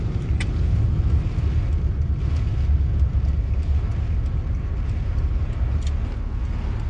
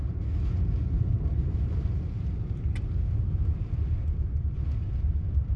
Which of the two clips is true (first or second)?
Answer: first